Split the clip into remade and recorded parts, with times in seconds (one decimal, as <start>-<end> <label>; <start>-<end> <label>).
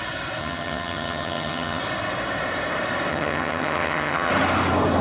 0.0-0.4 recorded; 0.4-1.8 remade; 1.8-3.1 recorded; 3.1-4.3 remade; 4.3-5.0 recorded